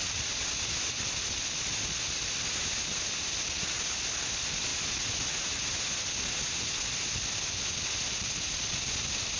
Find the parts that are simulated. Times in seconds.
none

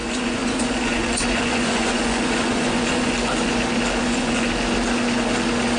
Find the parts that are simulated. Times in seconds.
0.0-3.5 (vocoder, Vocos); 4.0-4.5

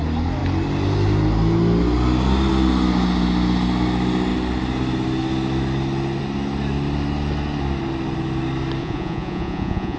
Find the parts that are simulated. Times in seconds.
8.8-10.0 (vocoder, Vocos)

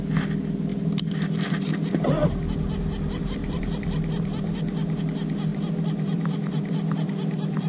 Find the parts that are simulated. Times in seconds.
0.7-2.3 (vocoder, BigVGAN v2); 3.4-5.0; 5.5-7.7

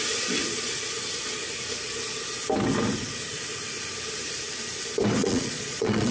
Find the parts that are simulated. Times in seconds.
5.2-6.1 (vocoder, Vocos)

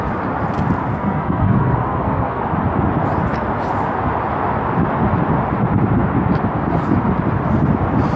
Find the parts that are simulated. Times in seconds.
0.9-2.4 (codec, SNAC)

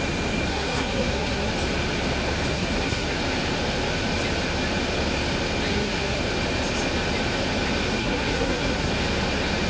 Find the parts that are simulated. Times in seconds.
0.5-1.5 (codec, SNAC); 2.5-3.2; 5.7-6.2; 8.0-8.9

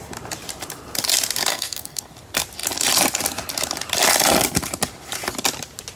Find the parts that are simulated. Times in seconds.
1.5-2.1 (codec, SNAC)